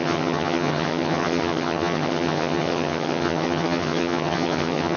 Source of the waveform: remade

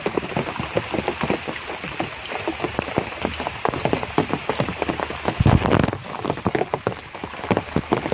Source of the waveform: recorded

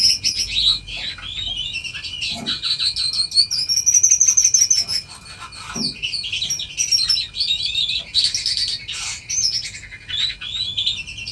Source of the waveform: recorded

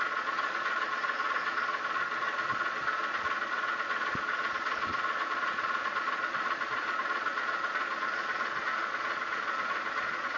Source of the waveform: remade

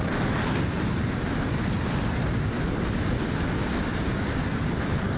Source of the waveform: recorded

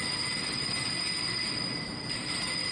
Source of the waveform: recorded